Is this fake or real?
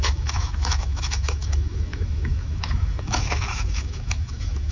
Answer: fake